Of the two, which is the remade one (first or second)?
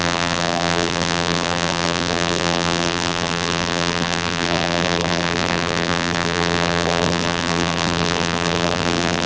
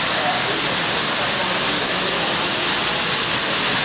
first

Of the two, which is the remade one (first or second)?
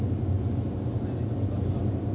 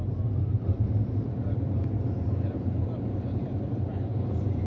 second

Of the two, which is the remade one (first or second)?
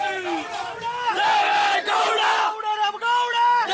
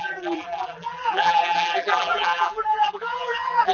second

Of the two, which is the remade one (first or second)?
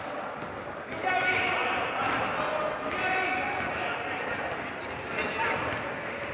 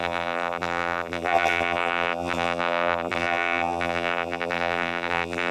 second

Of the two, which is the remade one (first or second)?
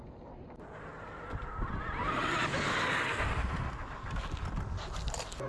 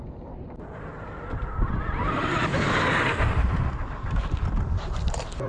second